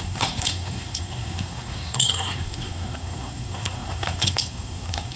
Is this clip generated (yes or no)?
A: yes